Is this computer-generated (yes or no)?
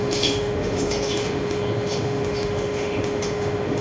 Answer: yes